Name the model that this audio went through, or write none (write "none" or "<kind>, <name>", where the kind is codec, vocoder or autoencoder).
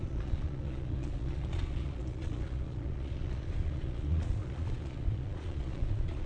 vocoder, Vocos